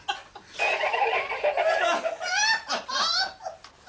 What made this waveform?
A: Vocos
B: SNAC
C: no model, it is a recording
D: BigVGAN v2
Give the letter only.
C